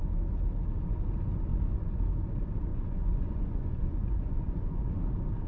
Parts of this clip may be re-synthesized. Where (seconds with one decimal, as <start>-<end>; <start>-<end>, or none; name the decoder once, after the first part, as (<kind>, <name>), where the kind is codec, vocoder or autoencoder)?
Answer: 1.5-2.0 (vocoder, Vocos); 2.7-4.9